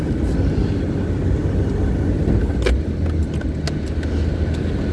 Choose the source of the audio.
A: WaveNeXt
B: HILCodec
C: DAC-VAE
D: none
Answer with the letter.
D